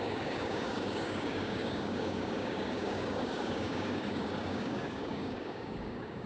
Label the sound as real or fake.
fake